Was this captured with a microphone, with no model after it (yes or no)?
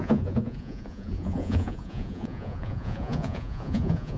no